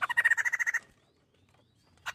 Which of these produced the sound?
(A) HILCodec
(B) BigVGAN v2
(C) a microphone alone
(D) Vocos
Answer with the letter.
C